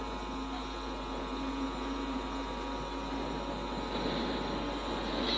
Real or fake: real